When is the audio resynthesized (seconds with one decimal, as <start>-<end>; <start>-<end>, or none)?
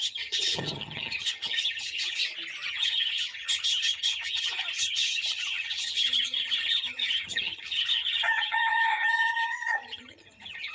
0.0-2.2; 2.7-10.7